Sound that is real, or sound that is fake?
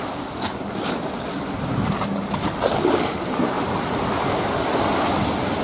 real